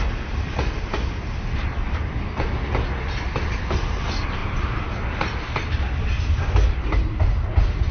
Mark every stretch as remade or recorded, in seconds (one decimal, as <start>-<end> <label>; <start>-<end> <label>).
0.0-7.9 recorded